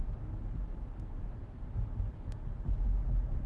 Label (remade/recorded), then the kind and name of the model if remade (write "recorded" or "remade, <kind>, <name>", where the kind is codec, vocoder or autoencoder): recorded